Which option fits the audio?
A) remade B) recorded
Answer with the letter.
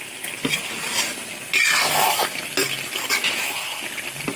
B